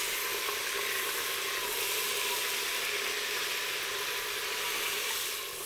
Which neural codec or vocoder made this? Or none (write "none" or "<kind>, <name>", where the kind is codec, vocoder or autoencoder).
none